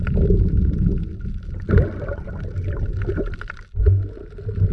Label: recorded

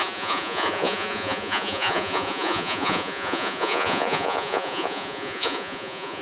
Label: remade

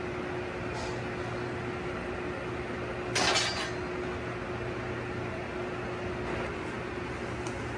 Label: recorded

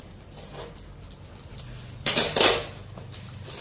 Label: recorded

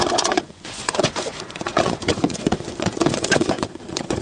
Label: remade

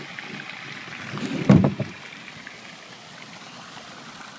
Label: recorded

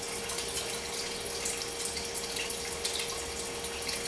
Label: recorded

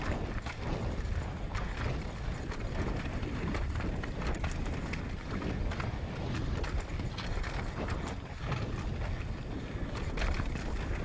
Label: recorded